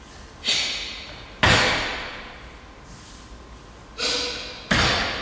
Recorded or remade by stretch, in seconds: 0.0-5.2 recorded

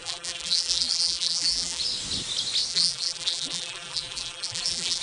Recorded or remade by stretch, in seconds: 0.0-1.8 remade; 1.8-2.7 recorded; 2.7-5.0 remade

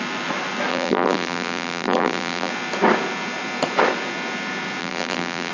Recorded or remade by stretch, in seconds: 0.0-0.7 recorded; 0.7-2.5 remade; 2.5-4.8 recorded; 4.8-5.5 remade